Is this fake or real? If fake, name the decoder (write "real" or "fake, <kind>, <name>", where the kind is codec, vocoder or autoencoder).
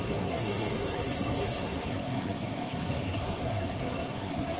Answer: fake, codec, SNAC